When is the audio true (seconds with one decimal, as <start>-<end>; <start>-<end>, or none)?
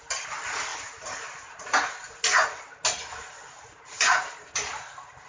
0.0-5.3